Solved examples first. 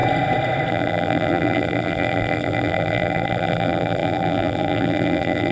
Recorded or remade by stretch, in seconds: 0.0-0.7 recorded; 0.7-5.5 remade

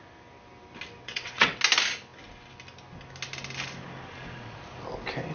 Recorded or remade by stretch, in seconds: 0.0-1.0 recorded; 1.0-1.6 remade; 1.6-5.3 recorded